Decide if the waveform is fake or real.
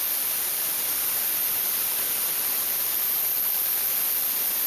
fake